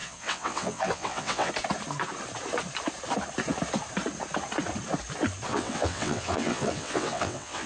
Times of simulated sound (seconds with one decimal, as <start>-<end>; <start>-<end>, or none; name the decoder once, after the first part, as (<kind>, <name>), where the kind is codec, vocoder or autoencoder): 0.0-1.5 (vocoder, WaveNeXt); 5.5-7.7